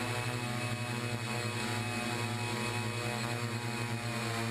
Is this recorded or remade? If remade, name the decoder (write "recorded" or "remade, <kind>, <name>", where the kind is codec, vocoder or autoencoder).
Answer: recorded